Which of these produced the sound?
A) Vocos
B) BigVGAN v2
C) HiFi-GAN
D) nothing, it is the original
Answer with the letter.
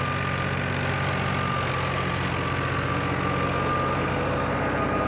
D